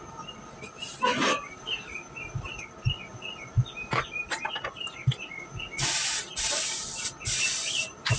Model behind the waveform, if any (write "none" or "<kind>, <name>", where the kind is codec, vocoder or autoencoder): none